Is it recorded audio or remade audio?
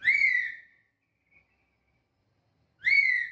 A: recorded